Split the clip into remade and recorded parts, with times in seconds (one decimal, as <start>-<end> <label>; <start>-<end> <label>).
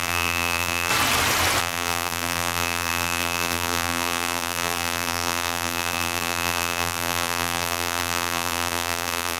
0.0-0.9 remade; 0.9-1.6 recorded; 1.6-9.4 remade